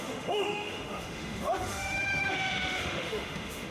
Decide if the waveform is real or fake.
fake